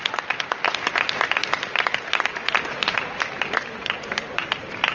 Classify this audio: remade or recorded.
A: recorded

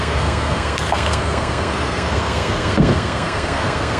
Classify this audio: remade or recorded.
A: remade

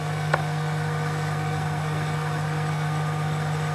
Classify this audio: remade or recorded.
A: remade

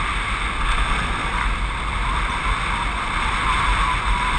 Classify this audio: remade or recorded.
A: recorded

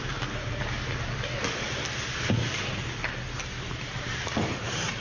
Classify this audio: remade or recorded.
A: recorded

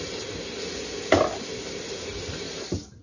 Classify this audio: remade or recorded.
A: recorded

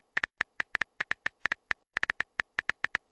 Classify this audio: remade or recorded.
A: remade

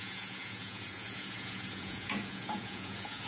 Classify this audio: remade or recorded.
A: remade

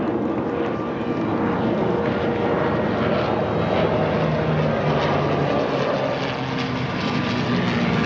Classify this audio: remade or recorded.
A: recorded